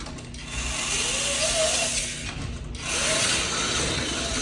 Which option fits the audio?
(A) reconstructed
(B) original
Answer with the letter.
B